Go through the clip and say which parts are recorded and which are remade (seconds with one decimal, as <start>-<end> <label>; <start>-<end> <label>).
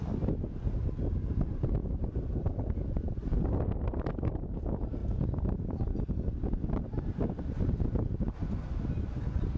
0.0-1.8 recorded; 1.8-4.5 remade; 4.5-5.0 recorded; 5.0-7.4 remade; 7.4-9.6 recorded